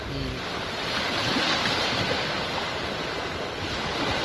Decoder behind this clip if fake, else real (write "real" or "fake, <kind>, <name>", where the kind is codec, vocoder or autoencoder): real